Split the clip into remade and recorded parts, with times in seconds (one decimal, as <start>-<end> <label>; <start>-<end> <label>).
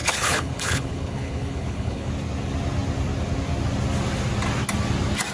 0.0-2.1 remade; 2.1-5.3 recorded